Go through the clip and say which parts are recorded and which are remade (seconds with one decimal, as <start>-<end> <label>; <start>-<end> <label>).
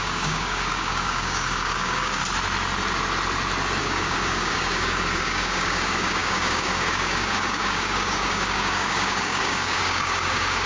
0.0-2.2 remade; 2.2-3.8 recorded; 3.8-10.7 remade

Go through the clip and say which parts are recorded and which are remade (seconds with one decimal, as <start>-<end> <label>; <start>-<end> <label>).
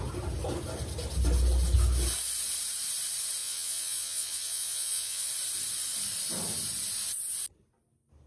0.0-3.4 recorded; 3.4-5.3 remade; 5.3-8.3 recorded